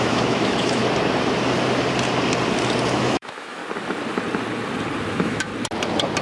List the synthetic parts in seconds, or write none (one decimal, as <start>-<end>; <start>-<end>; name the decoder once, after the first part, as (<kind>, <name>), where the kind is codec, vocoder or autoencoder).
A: 0.0-0.8 (autoencoder, DAC-VAE); 2.9-3.6; 5.1-5.5